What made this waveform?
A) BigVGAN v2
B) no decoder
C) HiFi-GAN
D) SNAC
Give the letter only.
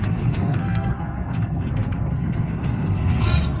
D